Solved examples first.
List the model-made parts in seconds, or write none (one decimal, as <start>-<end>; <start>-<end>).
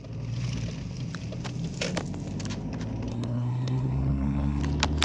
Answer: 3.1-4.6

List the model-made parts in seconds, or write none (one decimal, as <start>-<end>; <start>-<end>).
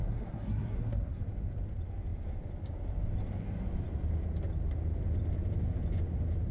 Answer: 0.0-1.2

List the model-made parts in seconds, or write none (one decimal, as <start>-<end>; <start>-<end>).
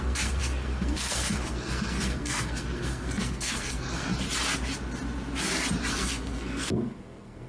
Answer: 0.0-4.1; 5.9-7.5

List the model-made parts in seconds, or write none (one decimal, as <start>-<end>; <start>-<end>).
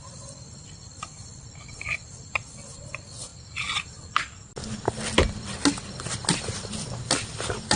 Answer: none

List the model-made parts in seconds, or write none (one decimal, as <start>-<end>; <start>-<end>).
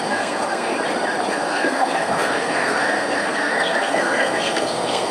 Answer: 0.0-0.7; 1.3-5.1